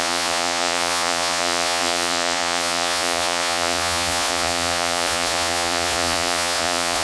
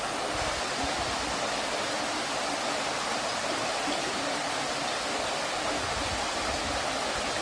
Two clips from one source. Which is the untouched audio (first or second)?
second